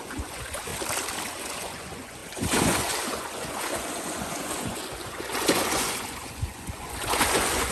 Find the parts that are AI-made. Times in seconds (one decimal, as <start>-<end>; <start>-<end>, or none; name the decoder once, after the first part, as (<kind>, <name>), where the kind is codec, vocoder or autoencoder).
0.0-0.7 (vocoder, Vocos); 1.3-7.7